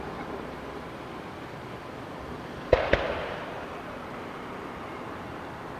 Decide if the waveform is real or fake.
fake